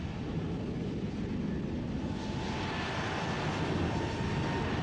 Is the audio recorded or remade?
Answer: recorded